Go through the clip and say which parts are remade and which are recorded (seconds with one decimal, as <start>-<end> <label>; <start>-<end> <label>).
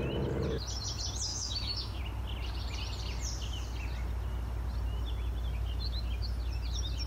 0.0-1.3 recorded; 1.3-2.0 remade; 2.0-7.1 recorded